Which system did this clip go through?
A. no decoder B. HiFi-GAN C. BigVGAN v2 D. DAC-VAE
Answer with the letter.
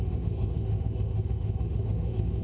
D